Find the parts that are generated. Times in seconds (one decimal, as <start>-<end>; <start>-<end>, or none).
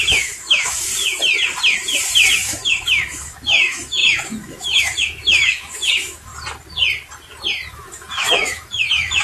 0.0-0.9; 2.3-6.3; 7.7-9.2